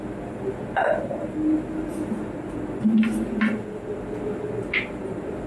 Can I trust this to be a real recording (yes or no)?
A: yes